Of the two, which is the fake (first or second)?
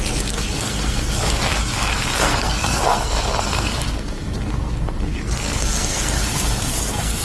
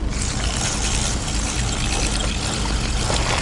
first